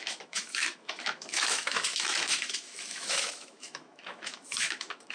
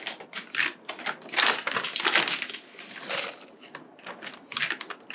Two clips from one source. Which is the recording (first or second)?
second